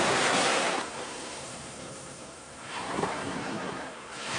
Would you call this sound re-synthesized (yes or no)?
yes